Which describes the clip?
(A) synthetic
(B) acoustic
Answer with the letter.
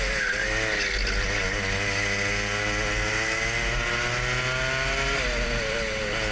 B